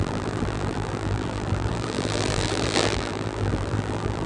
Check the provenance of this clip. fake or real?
fake